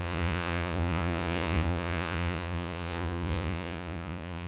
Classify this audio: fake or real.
fake